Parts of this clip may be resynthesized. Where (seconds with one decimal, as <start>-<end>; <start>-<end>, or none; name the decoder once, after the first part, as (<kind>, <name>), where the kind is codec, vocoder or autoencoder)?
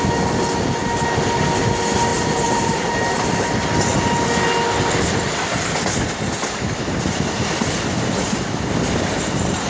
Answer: 2.1-3.8 (vocoder, BigVGAN v2)